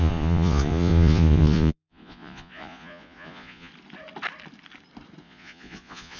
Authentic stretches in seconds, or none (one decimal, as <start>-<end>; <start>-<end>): 3.7-5.2